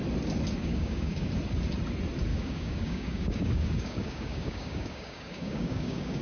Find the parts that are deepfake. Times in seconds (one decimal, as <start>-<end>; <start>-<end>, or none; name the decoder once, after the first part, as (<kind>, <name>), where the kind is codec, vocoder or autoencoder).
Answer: 0.6-1.3 (codec, DAC); 2.3-6.2